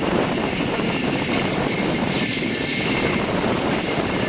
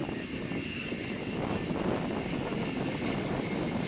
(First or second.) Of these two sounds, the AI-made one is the first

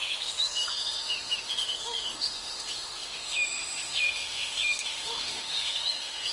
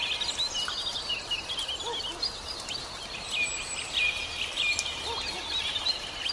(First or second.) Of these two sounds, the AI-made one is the first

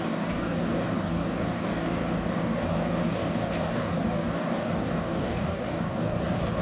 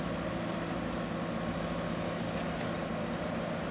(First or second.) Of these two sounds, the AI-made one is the first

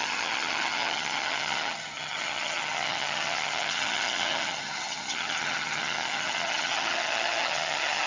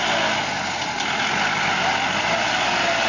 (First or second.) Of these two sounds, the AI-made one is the first